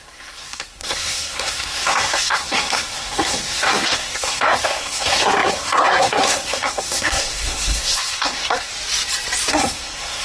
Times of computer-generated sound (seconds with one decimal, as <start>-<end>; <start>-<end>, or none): 0.0-8.7; 9.5-10.2